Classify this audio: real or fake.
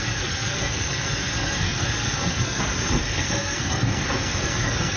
fake